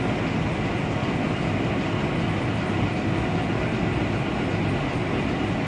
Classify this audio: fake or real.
real